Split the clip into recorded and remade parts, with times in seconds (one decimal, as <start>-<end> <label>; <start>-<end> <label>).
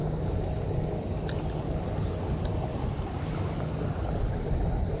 0.0-5.0 recorded